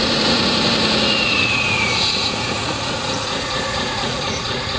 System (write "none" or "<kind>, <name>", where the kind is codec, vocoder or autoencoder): vocoder, Vocos